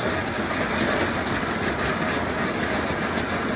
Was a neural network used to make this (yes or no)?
no